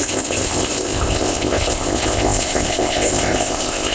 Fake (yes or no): yes